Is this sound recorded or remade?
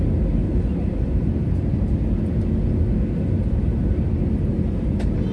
recorded